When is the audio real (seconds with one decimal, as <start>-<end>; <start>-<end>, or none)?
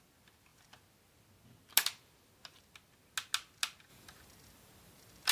0.0-3.9